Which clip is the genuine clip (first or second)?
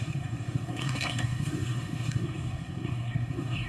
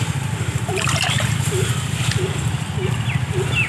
second